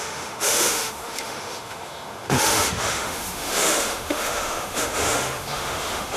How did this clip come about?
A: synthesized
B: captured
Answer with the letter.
A